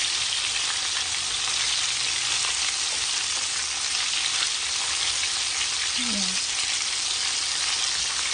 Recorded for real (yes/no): yes